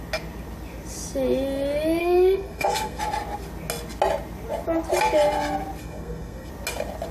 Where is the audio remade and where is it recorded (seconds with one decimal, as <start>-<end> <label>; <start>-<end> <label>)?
0.0-2.0 recorded; 2.0-3.0 remade; 3.0-5.8 recorded; 5.8-6.5 remade; 6.5-7.1 recorded

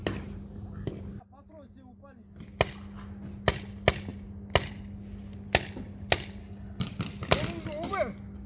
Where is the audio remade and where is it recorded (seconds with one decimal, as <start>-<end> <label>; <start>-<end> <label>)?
0.0-6.4 recorded; 6.4-6.9 remade; 6.9-8.5 recorded

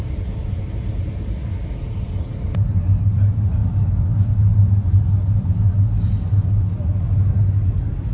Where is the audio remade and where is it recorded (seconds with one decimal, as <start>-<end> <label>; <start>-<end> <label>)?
0.0-8.1 recorded

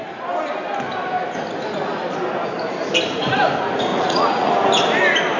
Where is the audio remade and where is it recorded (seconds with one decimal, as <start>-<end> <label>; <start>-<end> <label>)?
0.0-3.9 recorded; 3.9-4.5 remade; 4.5-5.4 recorded

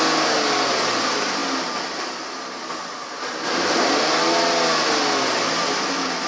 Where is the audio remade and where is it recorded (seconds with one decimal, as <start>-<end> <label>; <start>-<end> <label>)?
0.0-6.3 recorded

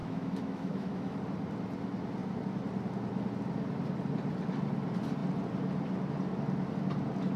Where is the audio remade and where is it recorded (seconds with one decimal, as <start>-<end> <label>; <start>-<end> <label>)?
0.0-1.2 remade; 1.2-7.4 recorded

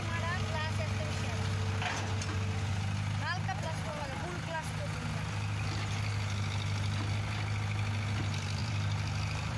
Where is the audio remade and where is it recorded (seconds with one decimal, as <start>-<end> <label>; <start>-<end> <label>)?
0.0-8.6 recorded; 8.6-9.6 remade

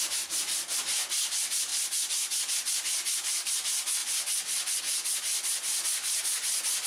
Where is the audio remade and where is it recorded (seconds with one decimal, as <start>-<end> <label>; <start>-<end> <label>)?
0.0-6.9 recorded